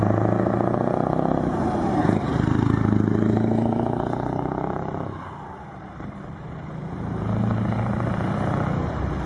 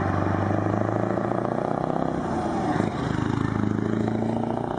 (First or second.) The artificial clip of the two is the first